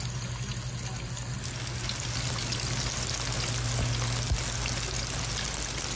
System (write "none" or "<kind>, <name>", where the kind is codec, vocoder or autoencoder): none